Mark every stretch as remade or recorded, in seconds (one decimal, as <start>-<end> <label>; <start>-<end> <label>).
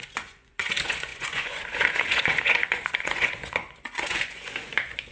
0.0-5.1 remade